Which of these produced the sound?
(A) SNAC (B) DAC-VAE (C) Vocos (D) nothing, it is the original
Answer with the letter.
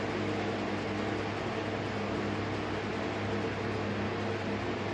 D